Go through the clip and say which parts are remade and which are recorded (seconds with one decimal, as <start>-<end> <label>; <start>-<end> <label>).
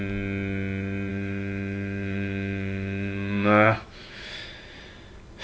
0.0-1.1 recorded; 1.1-4.3 remade; 4.3-5.4 recorded